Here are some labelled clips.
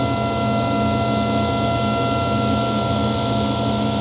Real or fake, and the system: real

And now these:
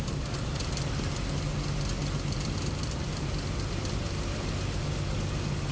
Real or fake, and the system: real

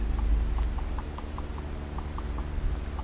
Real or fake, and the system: real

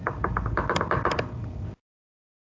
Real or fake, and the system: real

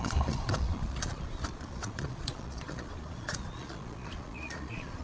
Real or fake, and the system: fake, vocoder, Vocos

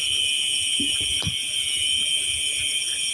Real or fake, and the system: real